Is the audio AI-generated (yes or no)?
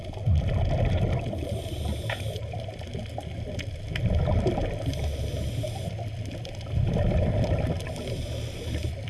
no